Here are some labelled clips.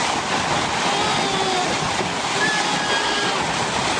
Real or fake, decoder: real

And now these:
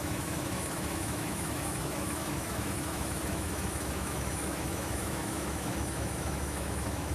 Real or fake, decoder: fake, autoencoder, DAC-VAE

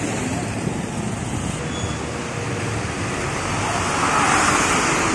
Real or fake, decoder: real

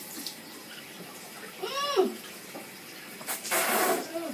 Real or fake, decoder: fake, vocoder, BigVGAN v2